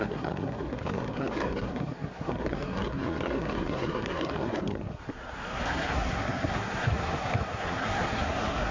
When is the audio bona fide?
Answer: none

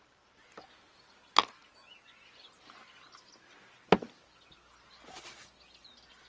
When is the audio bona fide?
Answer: 0.0-6.3

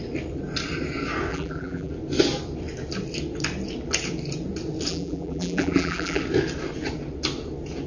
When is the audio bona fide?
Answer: 0.0-1.3; 1.9-4.9; 6.2-7.9

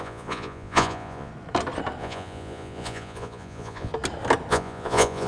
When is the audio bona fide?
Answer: 1.3-2.0; 3.9-4.5

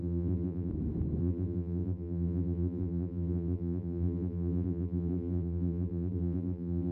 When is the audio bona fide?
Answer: 0.7-1.2

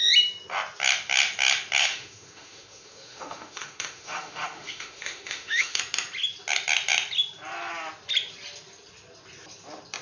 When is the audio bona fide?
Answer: 0.0-1.8; 5.8-10.0

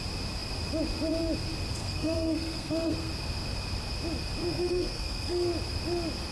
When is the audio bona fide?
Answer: 0.0-1.8; 3.1-4.4; 5.5-6.3

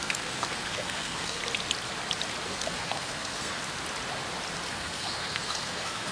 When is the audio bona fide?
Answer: 1.4-2.5; 3.6-4.7